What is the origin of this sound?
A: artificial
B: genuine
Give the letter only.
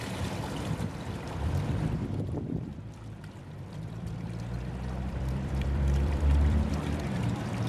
A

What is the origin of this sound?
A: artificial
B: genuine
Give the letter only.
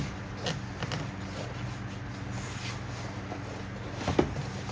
B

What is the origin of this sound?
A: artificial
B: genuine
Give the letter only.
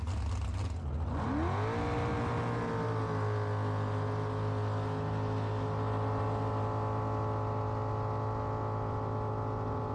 B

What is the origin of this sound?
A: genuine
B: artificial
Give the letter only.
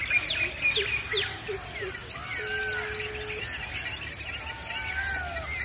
A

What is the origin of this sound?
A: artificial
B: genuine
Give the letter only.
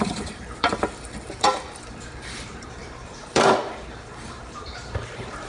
A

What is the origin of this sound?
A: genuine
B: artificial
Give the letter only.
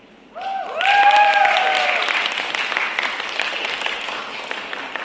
A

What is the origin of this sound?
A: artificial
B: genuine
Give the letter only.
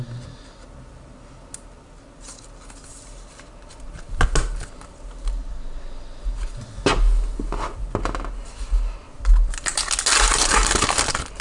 B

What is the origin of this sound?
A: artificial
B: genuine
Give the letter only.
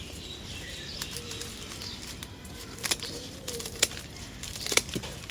A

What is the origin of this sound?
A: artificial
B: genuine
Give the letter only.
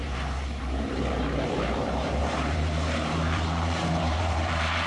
A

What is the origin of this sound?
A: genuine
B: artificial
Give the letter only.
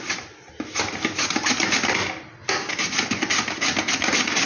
A